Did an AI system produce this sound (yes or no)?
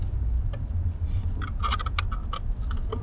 no